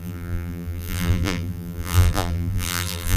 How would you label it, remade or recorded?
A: remade